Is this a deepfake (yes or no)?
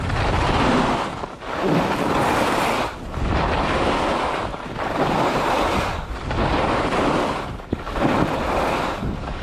no